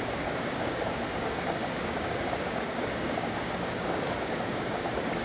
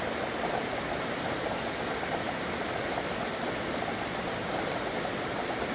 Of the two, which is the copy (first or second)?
first